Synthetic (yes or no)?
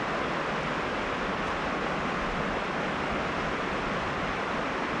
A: no